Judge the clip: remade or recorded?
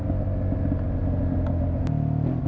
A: recorded